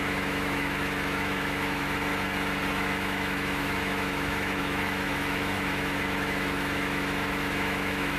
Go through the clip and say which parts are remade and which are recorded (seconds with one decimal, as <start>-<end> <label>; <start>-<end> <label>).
0.0-2.1 remade; 2.1-2.7 recorded; 2.7-8.2 remade